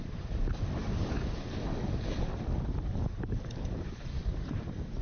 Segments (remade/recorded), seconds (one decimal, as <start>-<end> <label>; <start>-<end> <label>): 0.0-0.8 remade; 0.8-3.8 recorded; 3.8-5.0 remade